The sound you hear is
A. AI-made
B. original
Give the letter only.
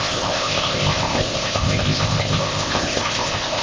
A